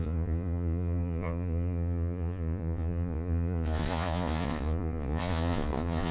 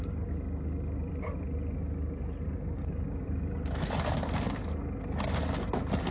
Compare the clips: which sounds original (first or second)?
second